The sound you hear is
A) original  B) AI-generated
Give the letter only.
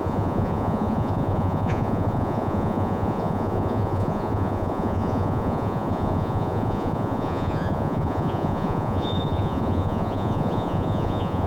B